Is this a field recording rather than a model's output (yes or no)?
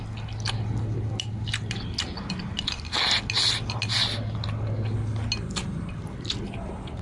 yes